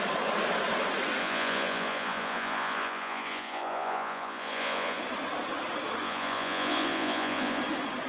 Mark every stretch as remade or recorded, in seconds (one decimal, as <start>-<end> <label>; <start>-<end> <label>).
0.0-1.2 recorded; 1.2-5.0 remade; 5.0-6.0 recorded; 6.0-7.6 remade; 7.6-8.1 recorded